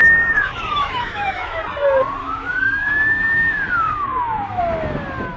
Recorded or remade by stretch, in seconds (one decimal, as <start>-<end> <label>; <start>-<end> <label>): 0.0-1.6 remade; 1.6-2.2 recorded; 2.2-4.6 remade; 4.6-5.4 recorded